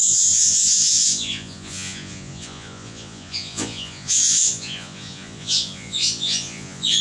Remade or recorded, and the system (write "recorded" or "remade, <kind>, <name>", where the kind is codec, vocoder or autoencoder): remade, vocoder, Vocos